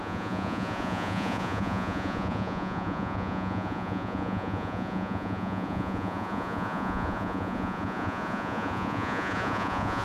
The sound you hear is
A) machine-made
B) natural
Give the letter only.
A